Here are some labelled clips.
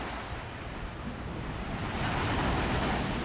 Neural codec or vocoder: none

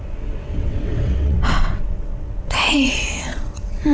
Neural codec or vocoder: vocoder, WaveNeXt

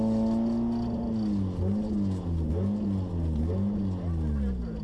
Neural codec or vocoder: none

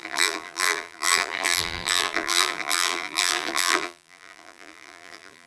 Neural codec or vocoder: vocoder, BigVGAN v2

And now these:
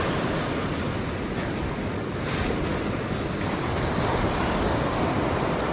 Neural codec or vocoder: none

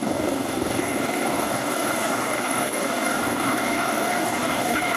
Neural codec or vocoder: codec, DAC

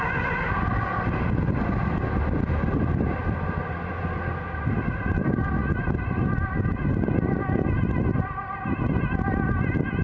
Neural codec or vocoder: none